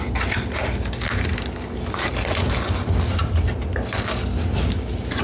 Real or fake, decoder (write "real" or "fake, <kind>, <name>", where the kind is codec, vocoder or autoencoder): real